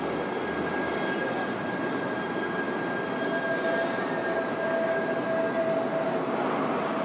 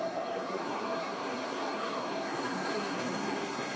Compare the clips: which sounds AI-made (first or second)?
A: second